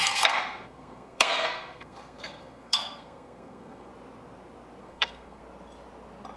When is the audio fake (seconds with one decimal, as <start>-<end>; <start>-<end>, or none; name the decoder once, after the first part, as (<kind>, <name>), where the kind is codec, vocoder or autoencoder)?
0.0-3.9 (codec, SNAC); 4.8-5.4